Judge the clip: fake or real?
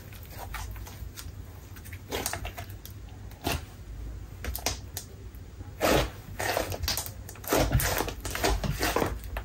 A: real